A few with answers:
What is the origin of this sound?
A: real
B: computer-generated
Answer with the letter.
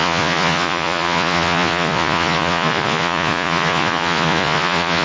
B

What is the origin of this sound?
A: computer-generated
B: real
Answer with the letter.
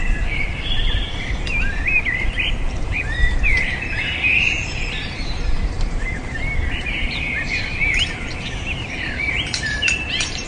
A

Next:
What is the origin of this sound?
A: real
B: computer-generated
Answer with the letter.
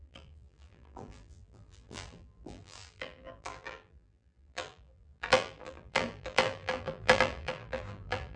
B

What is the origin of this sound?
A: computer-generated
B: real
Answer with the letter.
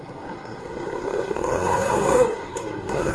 A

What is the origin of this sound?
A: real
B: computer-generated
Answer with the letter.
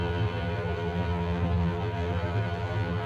B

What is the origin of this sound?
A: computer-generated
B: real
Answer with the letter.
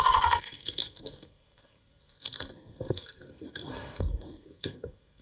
A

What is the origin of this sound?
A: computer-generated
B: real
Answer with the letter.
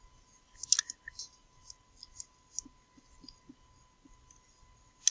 B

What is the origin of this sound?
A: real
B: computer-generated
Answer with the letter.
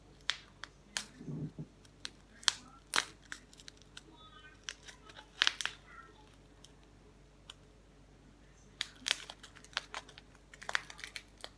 A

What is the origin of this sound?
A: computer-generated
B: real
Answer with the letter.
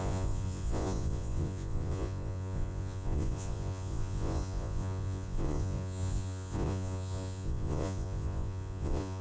A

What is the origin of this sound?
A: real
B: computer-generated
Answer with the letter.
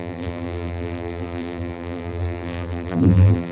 B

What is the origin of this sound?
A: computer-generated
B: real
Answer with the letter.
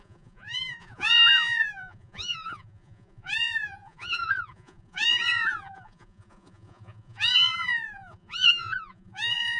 A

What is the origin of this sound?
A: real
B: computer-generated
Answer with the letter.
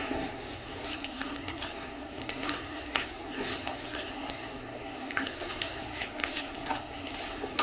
B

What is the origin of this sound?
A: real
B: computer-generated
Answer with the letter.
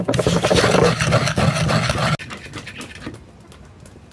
A